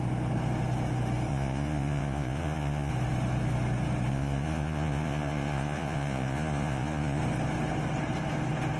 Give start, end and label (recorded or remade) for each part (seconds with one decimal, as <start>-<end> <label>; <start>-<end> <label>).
0.0-1.3 recorded; 1.3-2.9 remade; 2.9-4.1 recorded; 4.1-7.2 remade; 7.2-8.8 recorded